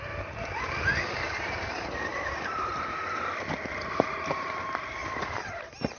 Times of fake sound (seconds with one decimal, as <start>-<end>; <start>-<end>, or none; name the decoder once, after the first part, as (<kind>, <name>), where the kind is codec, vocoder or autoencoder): 2.1-2.6 (vocoder, BigVGAN v2); 5.0-5.6